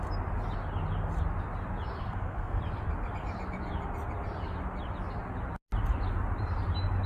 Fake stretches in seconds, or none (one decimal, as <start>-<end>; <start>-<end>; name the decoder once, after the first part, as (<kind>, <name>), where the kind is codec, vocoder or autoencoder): 2.0-2.6 (codec, SNAC)